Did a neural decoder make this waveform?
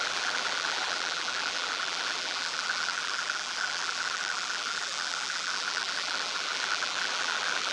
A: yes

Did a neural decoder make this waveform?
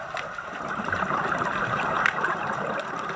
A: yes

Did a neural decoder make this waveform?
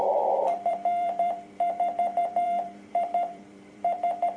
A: yes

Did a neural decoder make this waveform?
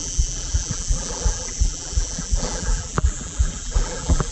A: yes